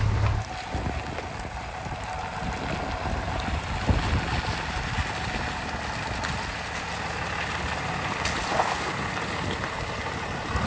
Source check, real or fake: real